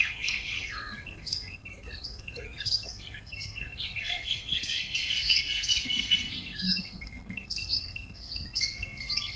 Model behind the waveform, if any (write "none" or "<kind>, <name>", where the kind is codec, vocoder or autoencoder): codec, SNAC